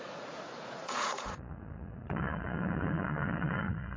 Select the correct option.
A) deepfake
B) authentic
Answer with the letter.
A